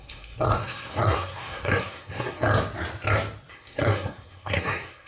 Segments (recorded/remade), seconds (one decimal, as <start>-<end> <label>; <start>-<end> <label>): 0.0-2.5 remade; 2.5-3.5 recorded; 3.5-5.1 remade